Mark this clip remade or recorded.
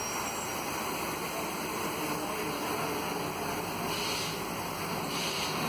recorded